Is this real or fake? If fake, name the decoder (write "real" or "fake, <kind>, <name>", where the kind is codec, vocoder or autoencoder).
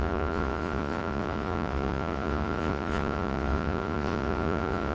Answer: fake, vocoder, Vocos